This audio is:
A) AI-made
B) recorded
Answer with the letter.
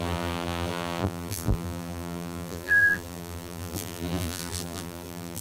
A